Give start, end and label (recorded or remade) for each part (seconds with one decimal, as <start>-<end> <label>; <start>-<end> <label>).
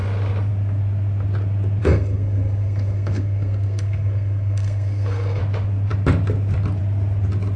0.0-1.8 recorded; 1.8-5.4 remade; 5.4-7.6 recorded